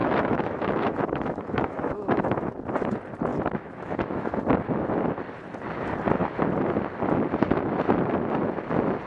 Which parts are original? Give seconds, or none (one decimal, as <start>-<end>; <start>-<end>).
2.6-3.3; 4.4-9.1